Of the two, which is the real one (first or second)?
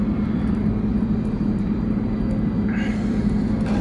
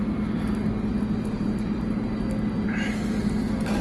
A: second